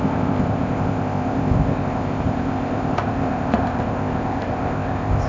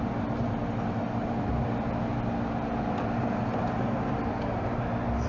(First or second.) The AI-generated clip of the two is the first